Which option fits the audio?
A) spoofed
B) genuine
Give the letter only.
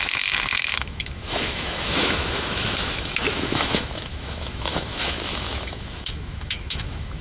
A